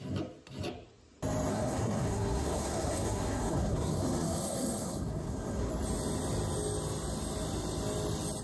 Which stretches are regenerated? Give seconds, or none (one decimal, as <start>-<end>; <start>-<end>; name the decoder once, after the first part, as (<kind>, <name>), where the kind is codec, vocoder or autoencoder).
1.5-5.7 (codec, SNAC)